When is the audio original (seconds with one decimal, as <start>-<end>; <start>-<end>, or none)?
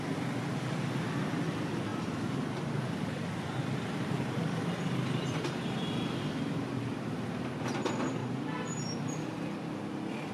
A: 0.0-1.9; 5.9-8.2; 9.1-10.3